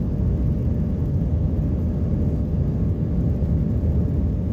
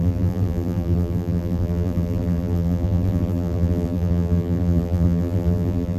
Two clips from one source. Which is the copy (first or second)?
second